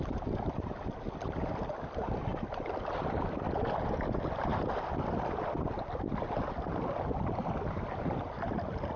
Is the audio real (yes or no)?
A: yes